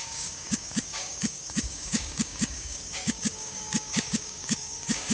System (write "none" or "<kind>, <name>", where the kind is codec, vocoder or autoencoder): codec, DAC